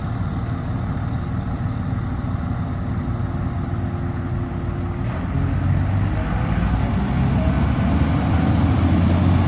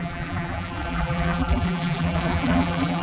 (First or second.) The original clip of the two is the first